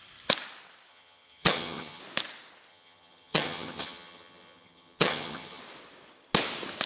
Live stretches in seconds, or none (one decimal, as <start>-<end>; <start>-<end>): 0.0-0.9; 2.0-2.7; 5.6-6.9